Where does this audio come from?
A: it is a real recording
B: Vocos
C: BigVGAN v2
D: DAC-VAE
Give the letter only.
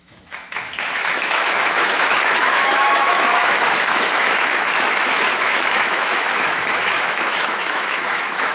D